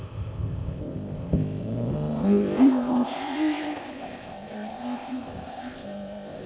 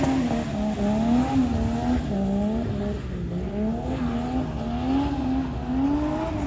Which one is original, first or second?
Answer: second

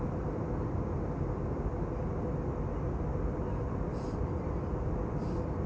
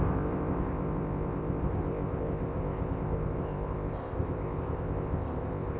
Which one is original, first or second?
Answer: first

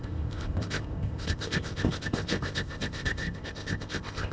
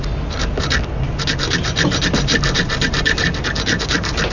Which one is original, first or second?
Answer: second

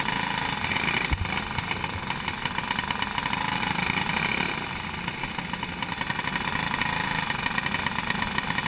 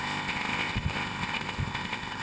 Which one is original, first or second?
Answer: first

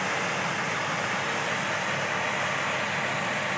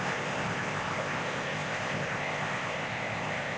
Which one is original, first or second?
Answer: first